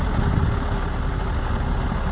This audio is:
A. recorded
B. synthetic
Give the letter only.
A